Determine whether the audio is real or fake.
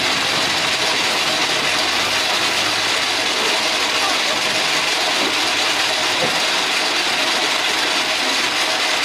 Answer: real